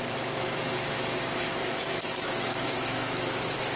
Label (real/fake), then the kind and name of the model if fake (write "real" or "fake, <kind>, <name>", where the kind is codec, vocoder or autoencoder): fake, autoencoder, DAC-VAE